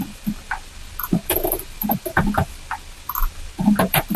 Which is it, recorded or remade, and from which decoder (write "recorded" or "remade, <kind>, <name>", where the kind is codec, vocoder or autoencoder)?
recorded